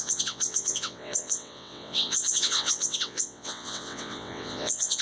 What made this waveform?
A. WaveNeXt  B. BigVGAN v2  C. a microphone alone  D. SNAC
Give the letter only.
A